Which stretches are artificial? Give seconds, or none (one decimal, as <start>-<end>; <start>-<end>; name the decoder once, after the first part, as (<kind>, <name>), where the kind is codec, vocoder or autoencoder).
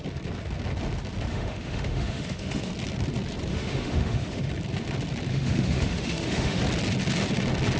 1.3-2.7 (autoencoder, DAC-VAE); 3.5-4.5; 5.3-6.6